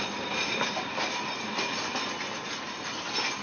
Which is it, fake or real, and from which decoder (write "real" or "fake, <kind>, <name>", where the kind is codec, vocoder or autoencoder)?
real